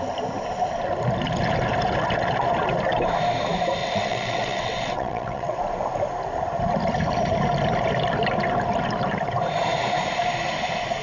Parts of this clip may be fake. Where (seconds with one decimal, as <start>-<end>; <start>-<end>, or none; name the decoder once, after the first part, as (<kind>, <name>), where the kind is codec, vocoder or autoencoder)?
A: 3.8-5.6 (vocoder, WaveNeXt)